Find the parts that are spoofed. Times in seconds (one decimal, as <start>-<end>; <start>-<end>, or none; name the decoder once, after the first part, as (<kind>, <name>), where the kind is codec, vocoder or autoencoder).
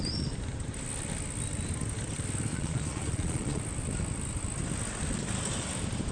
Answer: 2.5-3.6 (vocoder, Vocos)